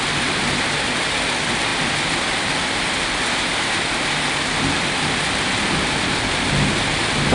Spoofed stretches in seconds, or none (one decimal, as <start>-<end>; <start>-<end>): none